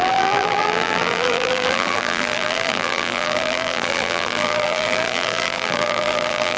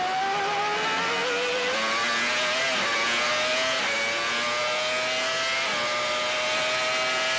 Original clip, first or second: second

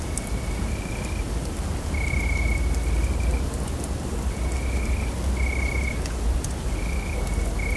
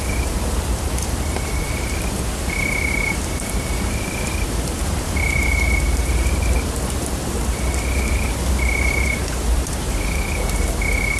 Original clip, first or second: first